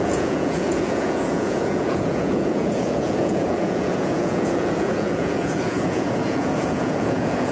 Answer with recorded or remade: remade